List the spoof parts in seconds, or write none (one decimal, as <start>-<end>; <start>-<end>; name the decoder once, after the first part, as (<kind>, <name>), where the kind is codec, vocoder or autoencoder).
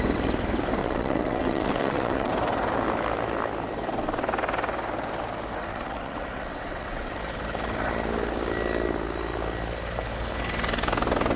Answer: 0.8-2.3 (vocoder, WaveNeXt); 5.7-7.2